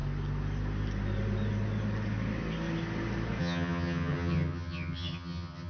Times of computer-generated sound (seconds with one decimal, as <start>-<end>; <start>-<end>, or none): 3.4-5.7

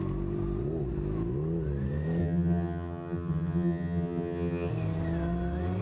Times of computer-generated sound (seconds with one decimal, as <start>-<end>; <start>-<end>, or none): 2.2-4.7

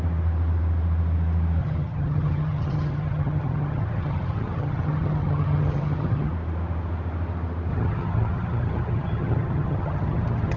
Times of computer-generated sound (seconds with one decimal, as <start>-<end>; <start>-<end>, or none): 1.6-6.3; 7.7-10.6

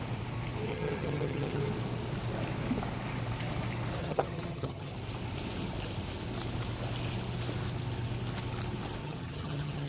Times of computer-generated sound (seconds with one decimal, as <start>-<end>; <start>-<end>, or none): 0.7-1.6; 4.0-4.9; 9.0-9.9

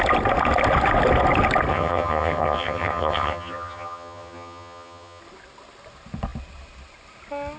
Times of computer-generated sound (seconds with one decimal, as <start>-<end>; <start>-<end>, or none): 1.7-5.2

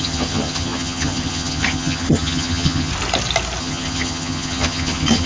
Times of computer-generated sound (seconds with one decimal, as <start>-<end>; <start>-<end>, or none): 0.0-2.9; 3.6-5.3

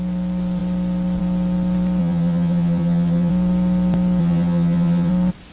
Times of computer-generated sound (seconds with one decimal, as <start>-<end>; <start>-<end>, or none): 2.0-3.3; 4.2-5.1

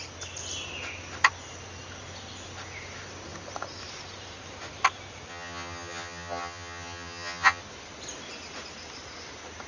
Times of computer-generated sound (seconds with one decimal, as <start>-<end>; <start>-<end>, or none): 5.3-7.6